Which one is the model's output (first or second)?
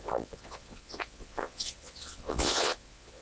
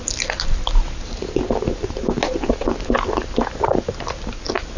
first